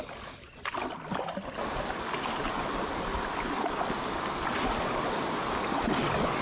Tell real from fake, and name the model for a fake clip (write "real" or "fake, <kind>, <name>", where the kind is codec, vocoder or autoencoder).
real